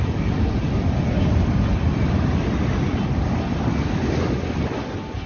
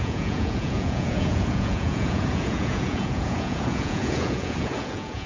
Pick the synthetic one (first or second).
second